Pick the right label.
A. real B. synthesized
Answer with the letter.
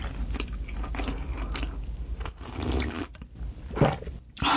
A